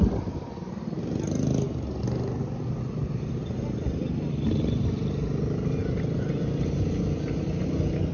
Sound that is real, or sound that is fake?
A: real